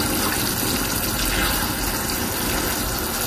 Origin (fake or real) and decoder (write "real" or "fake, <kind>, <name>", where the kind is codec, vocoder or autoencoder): real